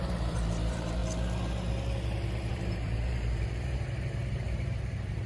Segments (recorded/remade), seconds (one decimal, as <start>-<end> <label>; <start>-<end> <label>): 0.0-1.0 remade; 1.0-2.5 recorded; 2.5-5.3 remade